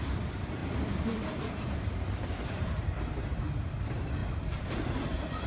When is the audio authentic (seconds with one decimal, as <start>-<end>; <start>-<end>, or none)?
none